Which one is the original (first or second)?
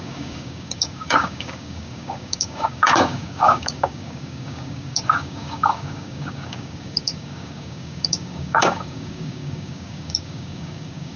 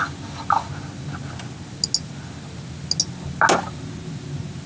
second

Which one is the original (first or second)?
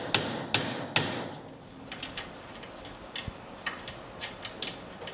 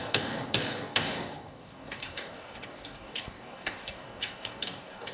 first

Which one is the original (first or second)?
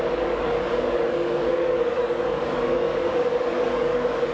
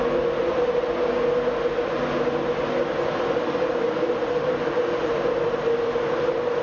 second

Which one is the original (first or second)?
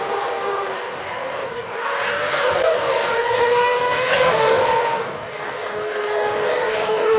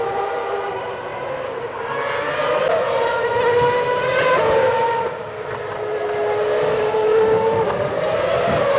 second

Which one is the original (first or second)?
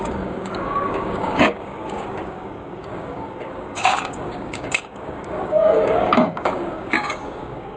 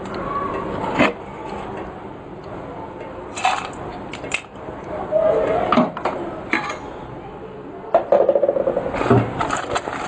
second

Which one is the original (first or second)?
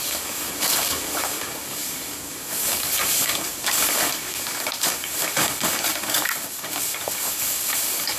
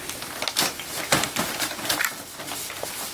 second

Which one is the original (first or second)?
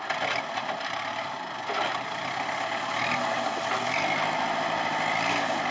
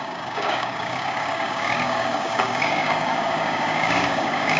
first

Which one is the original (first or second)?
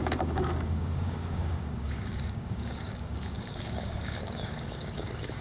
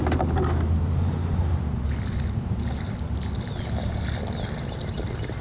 second